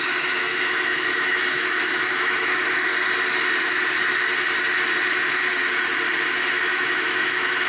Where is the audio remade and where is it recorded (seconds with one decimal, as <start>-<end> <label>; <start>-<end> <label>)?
0.0-2.9 remade; 2.9-6.5 recorded; 6.5-7.7 remade